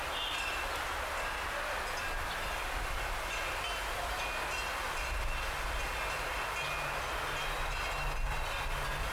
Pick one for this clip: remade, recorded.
recorded